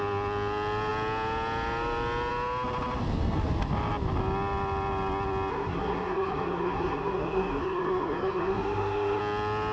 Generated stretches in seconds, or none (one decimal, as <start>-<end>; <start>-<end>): 5.5-9.2